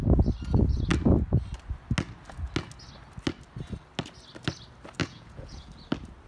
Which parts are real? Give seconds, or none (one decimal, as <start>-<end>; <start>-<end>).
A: 0.0-5.0; 5.6-6.3